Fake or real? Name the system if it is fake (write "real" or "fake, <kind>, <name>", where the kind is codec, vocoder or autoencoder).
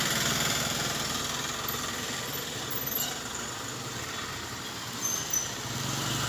real